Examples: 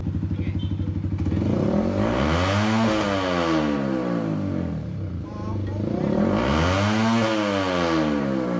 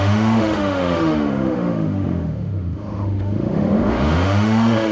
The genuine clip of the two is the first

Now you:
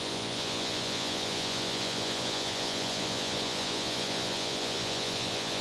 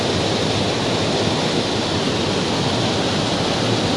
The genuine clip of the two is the second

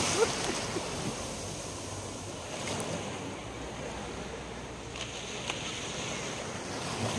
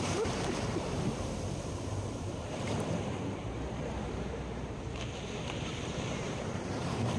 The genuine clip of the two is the first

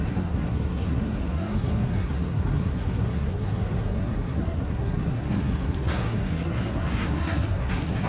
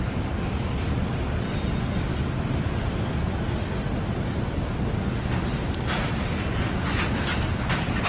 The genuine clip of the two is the second